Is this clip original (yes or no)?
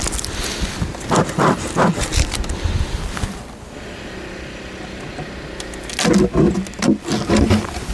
yes